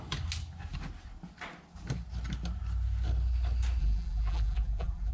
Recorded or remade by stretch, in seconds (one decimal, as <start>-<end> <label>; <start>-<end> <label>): 0.0-3.8 recorded; 3.8-5.1 remade